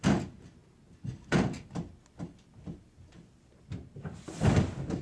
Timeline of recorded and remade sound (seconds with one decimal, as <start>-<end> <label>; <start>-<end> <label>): 0.0-5.0 recorded